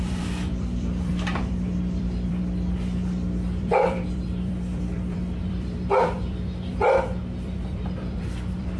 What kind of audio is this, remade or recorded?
remade